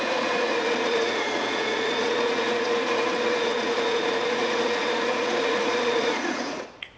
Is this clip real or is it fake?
fake